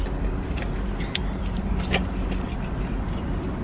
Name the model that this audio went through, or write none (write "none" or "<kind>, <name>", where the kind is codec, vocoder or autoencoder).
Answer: none